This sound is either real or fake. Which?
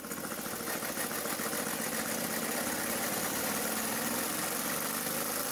real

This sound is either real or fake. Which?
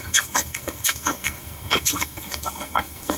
fake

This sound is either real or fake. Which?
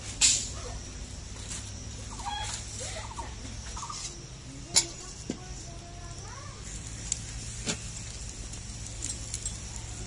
real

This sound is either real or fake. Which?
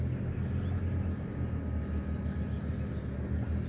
real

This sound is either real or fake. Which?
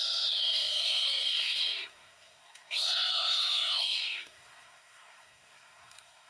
fake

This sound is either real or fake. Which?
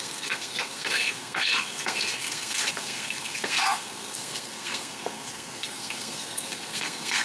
fake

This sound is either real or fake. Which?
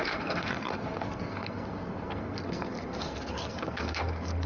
fake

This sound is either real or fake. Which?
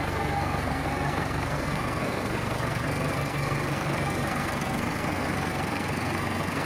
fake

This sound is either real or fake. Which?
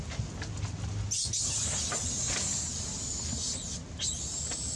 real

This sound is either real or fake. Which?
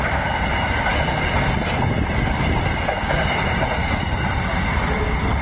real